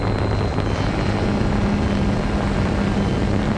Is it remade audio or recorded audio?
recorded